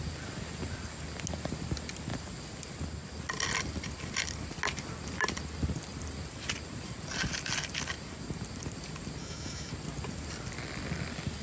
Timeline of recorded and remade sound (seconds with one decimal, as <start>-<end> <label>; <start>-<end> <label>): 0.0-9.2 recorded; 9.2-9.7 remade; 9.7-11.4 recorded